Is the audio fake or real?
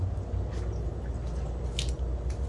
real